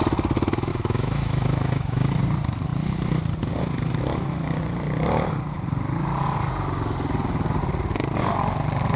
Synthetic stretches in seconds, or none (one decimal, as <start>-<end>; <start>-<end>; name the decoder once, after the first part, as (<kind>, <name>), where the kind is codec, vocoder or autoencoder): 0.7-2.2 (autoencoder, DAC-VAE)